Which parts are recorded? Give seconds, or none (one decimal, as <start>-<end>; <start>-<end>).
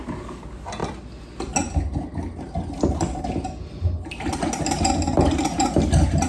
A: 0.0-6.3